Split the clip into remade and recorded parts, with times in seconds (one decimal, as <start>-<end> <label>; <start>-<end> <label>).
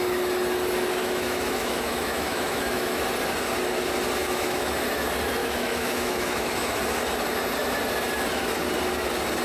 0.0-1.0 recorded; 1.0-3.0 remade; 3.0-4.2 recorded; 4.2-4.8 remade; 4.8-5.4 recorded; 5.4-6.8 remade; 6.8-9.4 recorded